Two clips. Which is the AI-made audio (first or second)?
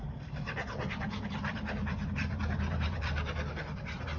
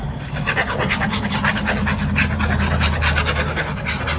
first